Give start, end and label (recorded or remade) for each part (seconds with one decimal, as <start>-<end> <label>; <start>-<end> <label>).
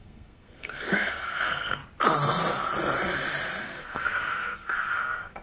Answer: 0.0-1.8 remade; 1.8-3.6 recorded; 3.6-5.4 remade